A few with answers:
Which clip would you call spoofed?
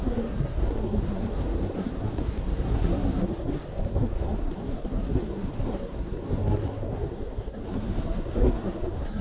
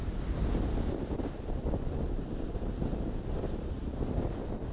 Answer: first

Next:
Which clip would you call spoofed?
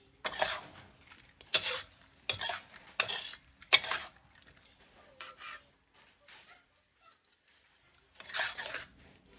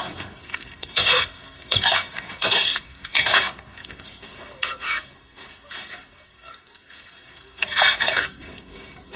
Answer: second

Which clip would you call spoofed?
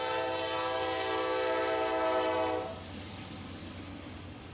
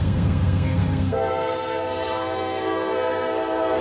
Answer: second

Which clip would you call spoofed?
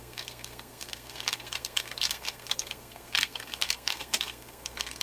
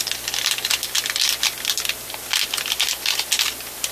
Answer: first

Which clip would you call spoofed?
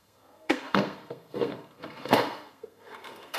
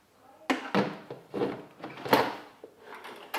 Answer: first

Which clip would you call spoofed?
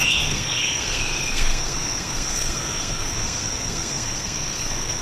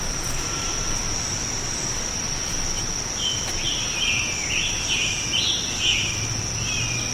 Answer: first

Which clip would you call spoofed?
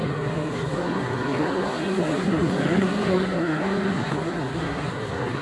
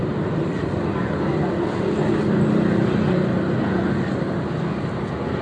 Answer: first